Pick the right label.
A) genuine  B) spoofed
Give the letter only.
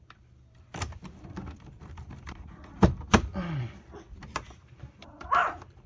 B